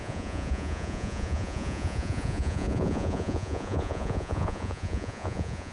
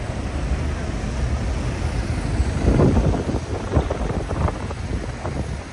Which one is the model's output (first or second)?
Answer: first